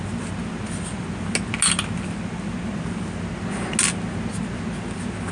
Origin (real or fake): real